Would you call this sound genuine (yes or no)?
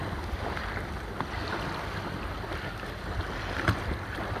yes